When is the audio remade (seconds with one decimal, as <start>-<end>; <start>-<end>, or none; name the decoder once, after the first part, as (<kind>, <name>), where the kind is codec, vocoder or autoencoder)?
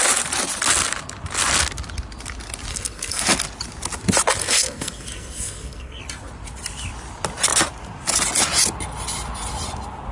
2.7-3.2 (codec, SNAC); 4.4-6.0